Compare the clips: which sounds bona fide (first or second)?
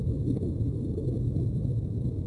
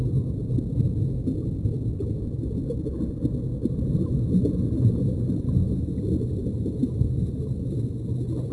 second